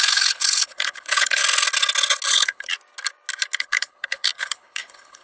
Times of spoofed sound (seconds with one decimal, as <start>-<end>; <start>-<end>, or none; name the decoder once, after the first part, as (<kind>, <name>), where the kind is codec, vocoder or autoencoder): 0.0-1.4 (codec, HILCodec); 2.3-2.7; 3.6-5.2